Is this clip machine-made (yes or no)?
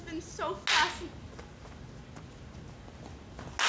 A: no